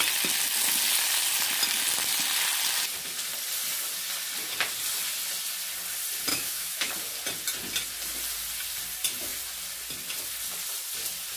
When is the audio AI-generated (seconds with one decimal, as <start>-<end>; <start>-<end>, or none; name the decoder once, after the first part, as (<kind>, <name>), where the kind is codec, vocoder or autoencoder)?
6.3-6.9 (autoencoder, DAC-VAE)